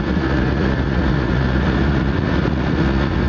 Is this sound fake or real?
fake